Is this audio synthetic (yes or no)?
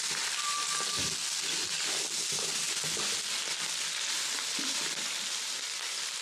no